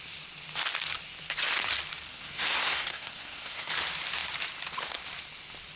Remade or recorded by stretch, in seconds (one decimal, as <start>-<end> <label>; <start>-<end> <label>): 0.0-2.1 recorded; 2.1-3.7 remade; 3.7-5.8 recorded